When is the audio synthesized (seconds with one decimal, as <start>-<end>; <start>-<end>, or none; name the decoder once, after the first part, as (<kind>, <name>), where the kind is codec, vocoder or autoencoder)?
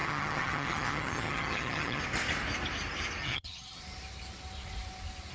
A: 0.0-2.0 (vocoder, HiFi-GAN); 3.2-3.8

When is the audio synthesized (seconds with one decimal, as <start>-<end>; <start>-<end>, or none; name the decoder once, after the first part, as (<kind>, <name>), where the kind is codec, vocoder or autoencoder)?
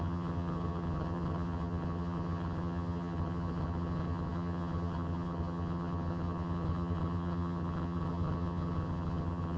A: 0.0-9.6 (vocoder, HiFi-GAN)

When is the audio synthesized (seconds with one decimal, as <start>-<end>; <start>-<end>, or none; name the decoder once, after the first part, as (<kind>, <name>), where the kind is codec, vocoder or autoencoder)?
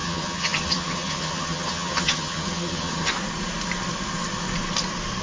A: 0.0-3.1 (vocoder, HiFi-GAN)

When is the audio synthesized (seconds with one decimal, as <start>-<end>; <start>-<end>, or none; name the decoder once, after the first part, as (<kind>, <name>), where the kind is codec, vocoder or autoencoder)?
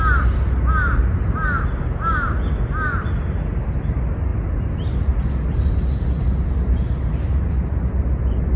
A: none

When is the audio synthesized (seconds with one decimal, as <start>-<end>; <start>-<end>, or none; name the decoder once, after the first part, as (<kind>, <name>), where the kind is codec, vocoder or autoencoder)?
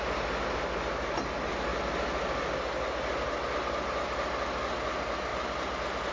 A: none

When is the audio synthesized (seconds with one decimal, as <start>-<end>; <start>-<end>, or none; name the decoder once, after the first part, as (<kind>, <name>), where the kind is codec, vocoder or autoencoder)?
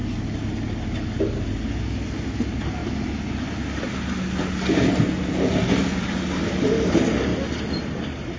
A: none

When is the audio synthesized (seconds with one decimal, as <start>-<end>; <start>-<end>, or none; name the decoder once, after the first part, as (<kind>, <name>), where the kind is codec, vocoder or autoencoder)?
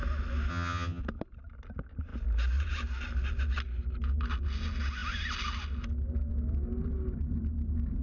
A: 0.5-1.0 (vocoder, HiFi-GAN)